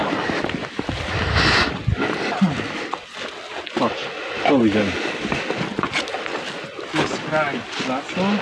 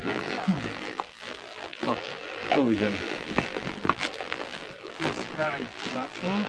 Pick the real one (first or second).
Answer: first